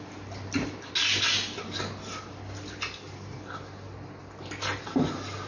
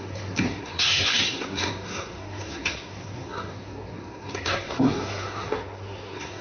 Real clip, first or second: first